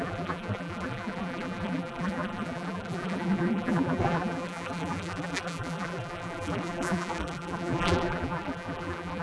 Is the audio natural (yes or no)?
no